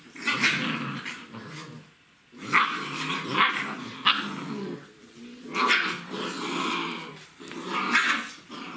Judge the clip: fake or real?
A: real